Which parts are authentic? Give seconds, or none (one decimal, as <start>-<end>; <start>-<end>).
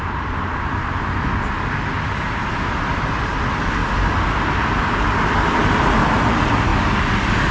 0.0-7.5